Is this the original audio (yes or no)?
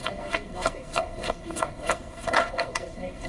no